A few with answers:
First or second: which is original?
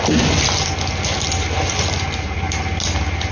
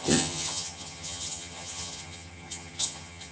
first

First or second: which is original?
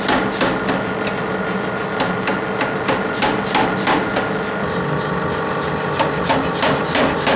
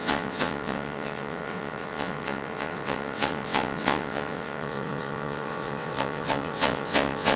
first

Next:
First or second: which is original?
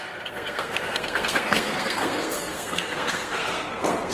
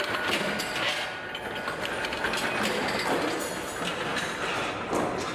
second